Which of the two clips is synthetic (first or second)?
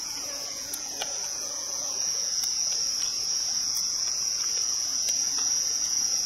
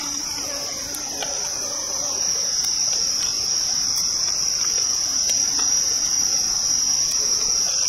first